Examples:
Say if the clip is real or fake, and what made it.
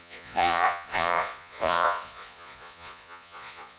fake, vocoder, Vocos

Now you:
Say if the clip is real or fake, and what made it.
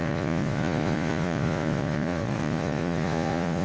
fake, vocoder, Vocos